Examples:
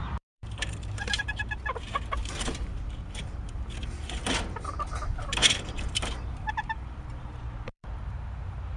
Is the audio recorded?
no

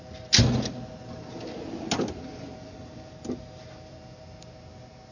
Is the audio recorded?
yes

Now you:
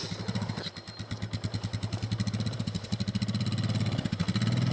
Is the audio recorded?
yes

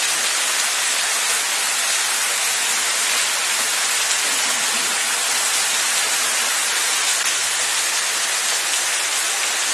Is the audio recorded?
yes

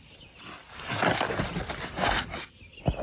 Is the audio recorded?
yes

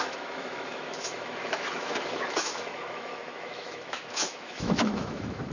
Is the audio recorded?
no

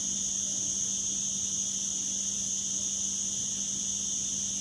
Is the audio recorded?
yes